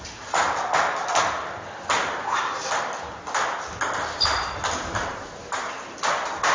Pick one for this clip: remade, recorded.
recorded